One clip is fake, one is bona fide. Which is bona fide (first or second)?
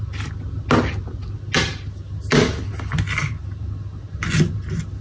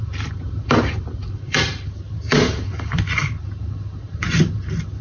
first